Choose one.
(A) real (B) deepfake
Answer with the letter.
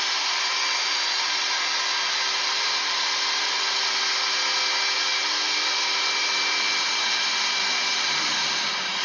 A